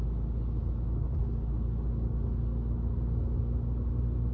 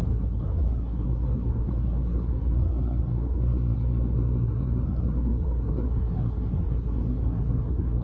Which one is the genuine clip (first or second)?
first